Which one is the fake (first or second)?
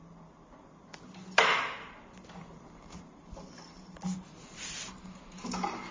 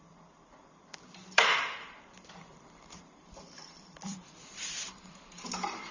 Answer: second